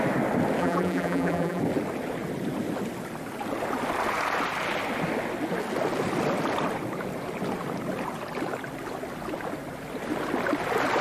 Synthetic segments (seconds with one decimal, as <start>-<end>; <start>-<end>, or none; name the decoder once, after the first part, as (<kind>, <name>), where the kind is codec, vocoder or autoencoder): 0.6-1.6 (vocoder, BigVGAN v2)